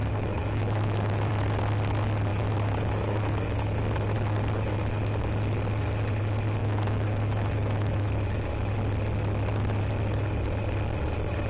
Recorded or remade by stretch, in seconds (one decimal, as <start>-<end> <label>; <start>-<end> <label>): 0.0-0.4 recorded; 0.4-1.3 remade; 1.3-2.3 recorded; 2.3-3.8 remade; 3.8-6.6 recorded; 6.6-8.5 remade; 8.5-11.5 recorded

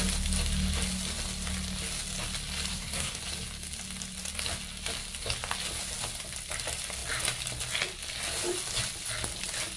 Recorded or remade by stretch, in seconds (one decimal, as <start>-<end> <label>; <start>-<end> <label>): 0.0-2.7 recorded; 2.7-3.2 remade; 3.2-9.8 recorded

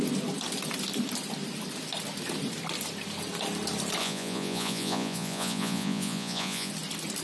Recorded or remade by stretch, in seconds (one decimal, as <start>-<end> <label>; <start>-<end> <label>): 0.0-4.0 recorded; 4.0-6.7 remade; 6.7-7.2 recorded

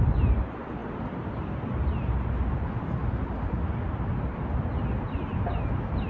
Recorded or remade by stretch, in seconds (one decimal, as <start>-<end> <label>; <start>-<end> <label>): 0.0-6.1 recorded

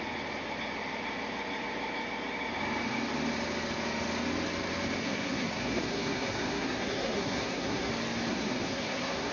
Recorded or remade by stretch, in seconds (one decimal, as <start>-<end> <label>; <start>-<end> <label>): 0.0-5.0 recorded; 5.0-7.9 remade; 7.9-8.3 recorded; 8.3-9.3 remade

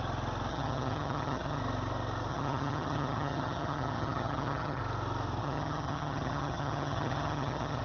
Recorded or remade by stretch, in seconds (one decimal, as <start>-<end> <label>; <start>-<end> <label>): 0.0-0.5 recorded; 0.5-1.6 remade; 1.6-2.3 recorded; 2.3-4.8 remade; 4.8-5.4 recorded; 5.4-7.8 remade